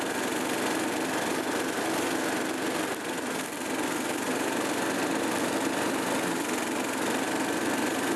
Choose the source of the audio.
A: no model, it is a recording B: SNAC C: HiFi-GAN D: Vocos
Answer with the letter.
A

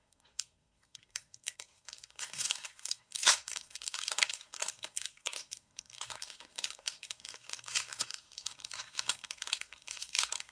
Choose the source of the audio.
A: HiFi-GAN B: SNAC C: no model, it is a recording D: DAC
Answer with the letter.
B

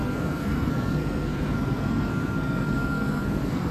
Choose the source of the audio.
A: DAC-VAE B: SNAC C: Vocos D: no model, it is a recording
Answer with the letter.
B